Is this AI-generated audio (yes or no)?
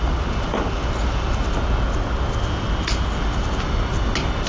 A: no